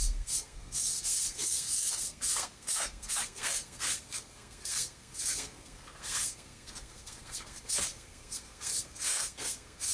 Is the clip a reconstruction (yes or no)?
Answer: yes